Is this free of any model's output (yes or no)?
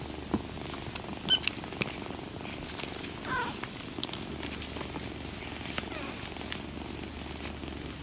yes